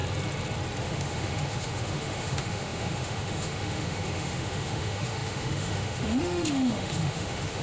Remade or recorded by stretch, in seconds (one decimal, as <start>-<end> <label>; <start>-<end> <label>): 0.0-0.8 recorded; 0.8-7.6 remade